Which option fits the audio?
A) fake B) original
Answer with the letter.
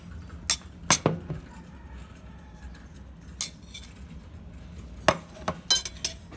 B